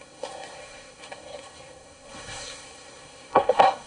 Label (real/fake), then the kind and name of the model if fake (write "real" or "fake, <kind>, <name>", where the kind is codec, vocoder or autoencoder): fake, codec, SNAC